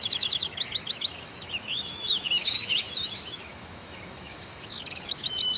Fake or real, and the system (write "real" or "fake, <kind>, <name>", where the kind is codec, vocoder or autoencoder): fake, autoencoder, DAC-VAE